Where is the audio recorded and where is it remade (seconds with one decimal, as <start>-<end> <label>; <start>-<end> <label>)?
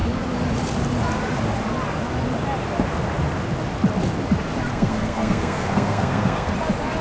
0.0-4.7 recorded; 4.7-6.5 remade; 6.5-7.0 recorded